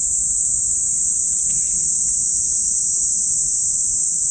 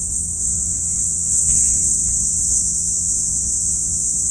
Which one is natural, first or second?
first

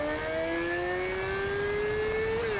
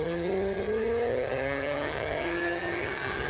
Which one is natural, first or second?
first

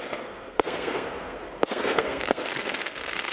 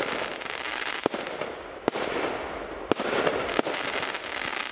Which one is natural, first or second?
second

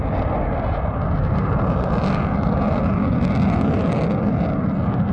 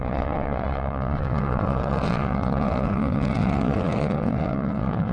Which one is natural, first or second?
first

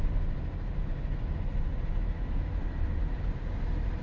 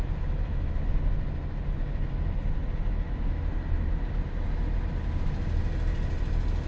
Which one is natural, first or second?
second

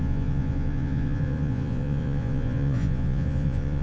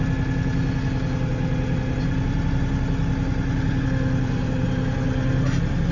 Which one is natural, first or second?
second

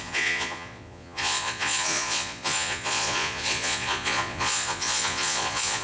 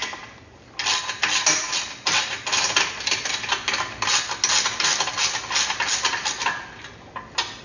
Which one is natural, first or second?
second